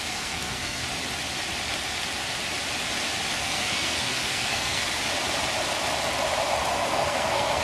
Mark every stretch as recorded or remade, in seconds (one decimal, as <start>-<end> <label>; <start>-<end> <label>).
0.0-0.8 remade; 0.8-3.3 recorded; 3.3-5.0 remade; 5.0-6.7 recorded; 6.7-7.6 remade